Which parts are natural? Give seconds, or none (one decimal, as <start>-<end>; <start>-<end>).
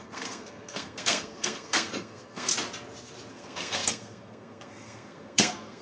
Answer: 2.5-3.3